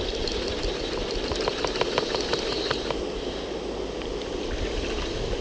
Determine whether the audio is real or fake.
real